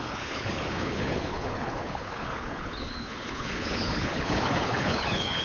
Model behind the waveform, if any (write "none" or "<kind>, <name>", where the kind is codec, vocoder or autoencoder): codec, HILCodec